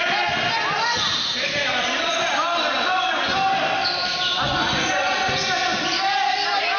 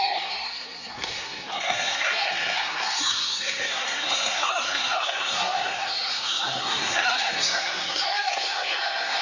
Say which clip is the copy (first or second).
second